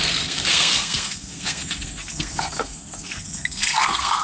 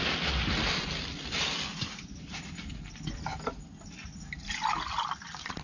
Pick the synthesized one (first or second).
first